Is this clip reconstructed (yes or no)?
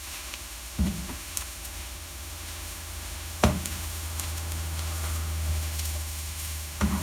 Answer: yes